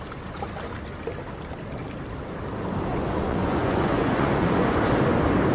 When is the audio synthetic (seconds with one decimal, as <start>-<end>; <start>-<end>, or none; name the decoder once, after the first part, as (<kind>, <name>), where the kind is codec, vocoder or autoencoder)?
2.9-4.8 (vocoder, Vocos)